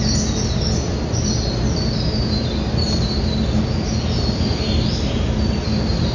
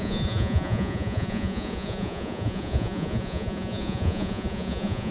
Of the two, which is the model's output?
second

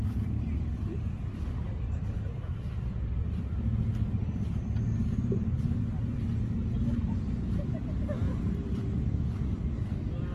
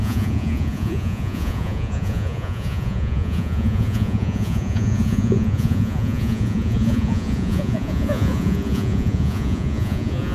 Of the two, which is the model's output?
second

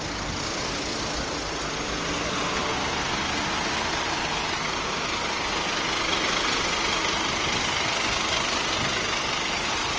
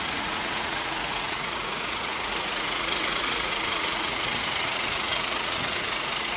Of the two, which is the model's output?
second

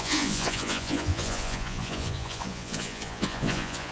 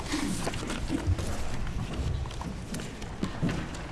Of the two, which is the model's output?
first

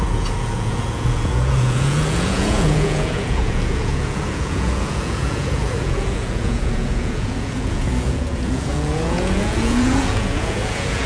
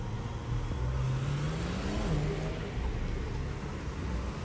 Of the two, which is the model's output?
first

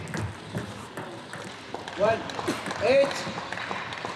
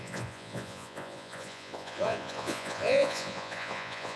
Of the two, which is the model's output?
second